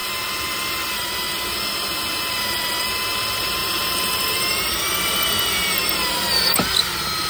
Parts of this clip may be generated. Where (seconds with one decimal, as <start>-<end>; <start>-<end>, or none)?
3.6-5.3